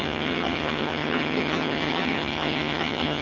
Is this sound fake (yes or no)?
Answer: yes